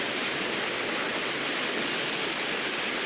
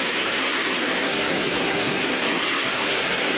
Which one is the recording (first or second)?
first